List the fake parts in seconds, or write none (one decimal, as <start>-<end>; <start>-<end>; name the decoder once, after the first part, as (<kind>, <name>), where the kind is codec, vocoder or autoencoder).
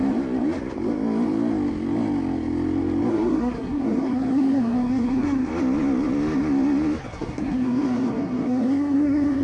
3.1-5.5 (codec, SNAC); 7.1-9.4